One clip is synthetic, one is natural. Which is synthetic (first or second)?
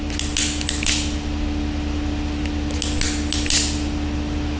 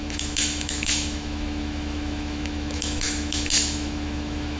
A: second